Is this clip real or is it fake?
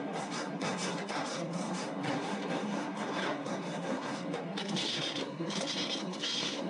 fake